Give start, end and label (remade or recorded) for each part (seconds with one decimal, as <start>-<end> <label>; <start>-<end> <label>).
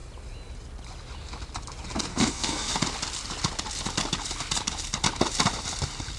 0.0-2.1 recorded; 2.1-2.8 remade; 2.8-6.2 recorded